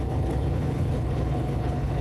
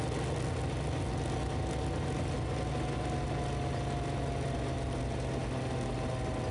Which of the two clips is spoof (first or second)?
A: first